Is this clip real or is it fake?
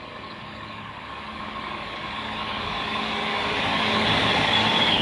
fake